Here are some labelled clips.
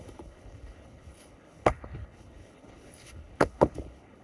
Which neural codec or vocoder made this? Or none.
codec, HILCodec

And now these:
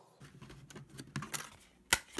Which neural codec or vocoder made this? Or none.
none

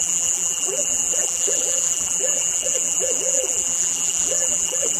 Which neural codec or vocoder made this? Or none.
vocoder, BigVGAN v2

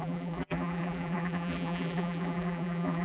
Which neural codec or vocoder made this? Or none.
vocoder, BigVGAN v2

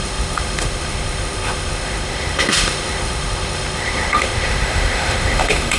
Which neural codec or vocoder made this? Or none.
autoencoder, DAC-VAE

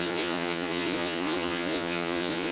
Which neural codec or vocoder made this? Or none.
vocoder, Vocos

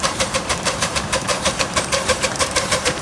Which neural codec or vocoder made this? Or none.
vocoder, BigVGAN v2